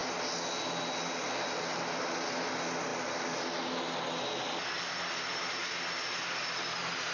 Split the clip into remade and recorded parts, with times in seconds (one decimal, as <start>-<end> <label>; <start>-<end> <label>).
0.0-7.1 recorded